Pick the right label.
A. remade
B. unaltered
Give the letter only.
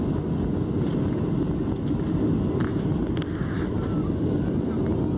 B